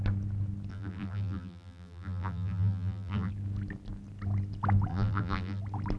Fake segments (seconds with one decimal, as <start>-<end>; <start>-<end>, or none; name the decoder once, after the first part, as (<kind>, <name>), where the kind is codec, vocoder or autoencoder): 0.7-3.3 (vocoder, BigVGAN v2); 4.9-5.6